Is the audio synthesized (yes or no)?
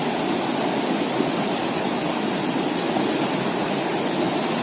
no